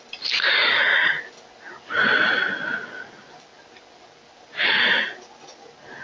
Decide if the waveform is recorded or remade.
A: recorded